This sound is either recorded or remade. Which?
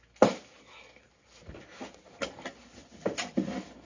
recorded